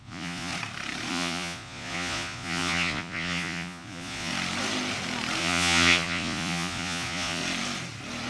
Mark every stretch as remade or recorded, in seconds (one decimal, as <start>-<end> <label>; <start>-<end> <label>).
0.0-0.5 remade; 0.5-1.1 recorded; 1.1-4.3 remade; 4.3-5.4 recorded; 5.4-7.4 remade; 7.4-8.3 recorded